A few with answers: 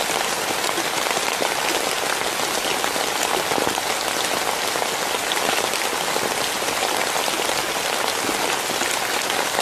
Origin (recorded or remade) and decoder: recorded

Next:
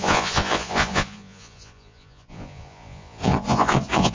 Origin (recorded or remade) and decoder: remade, vocoder, Vocos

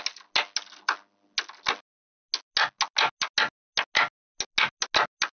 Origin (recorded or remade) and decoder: recorded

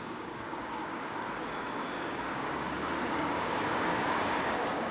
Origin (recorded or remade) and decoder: remade, codec, DAC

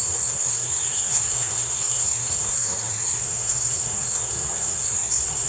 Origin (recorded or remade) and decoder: remade, codec, SNAC